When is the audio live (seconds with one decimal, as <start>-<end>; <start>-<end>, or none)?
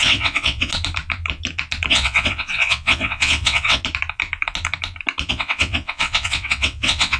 0.7-1.9; 3.8-5.3